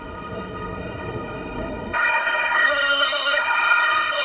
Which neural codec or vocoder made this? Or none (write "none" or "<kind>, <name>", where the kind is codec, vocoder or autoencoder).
codec, SNAC